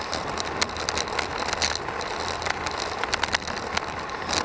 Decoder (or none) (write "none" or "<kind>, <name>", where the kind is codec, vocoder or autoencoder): none